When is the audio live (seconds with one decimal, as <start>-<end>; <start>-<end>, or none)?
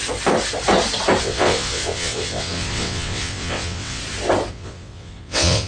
0.0-1.2; 4.0-4.5